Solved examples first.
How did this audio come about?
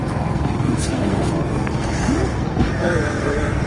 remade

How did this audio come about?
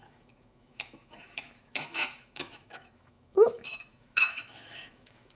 remade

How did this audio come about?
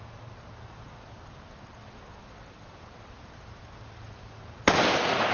recorded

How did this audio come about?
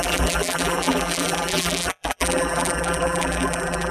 remade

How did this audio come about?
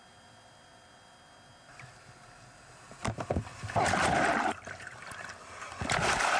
recorded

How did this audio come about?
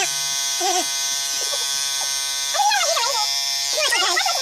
recorded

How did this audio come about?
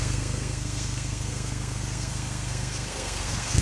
remade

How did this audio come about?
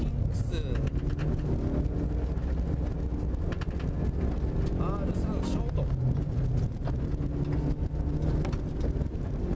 recorded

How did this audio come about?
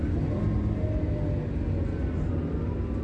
recorded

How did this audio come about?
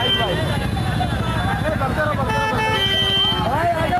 recorded